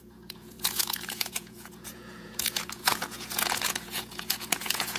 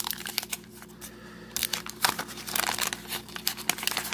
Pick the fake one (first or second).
first